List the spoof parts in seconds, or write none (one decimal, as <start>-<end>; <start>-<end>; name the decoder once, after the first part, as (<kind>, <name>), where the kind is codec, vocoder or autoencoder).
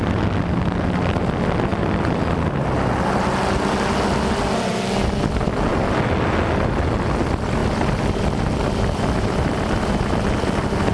1.7-2.9 (vocoder, BigVGAN v2); 7.6-10.9